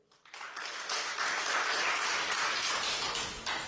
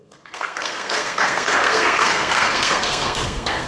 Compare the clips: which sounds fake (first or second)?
second